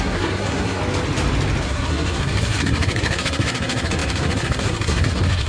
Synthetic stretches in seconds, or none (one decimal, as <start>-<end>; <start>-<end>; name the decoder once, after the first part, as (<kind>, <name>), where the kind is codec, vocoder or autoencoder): 0.0-0.8 (codec, SNAC); 1.6-5.5